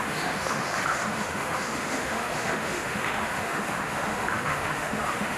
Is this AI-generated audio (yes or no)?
yes